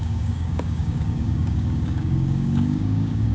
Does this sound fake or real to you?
fake